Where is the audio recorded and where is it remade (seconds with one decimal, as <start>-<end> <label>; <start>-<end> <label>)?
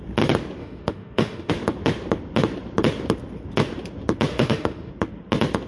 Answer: 0.0-0.6 recorded; 0.6-1.5 remade; 1.5-4.3 recorded; 4.3-4.9 remade; 4.9-5.7 recorded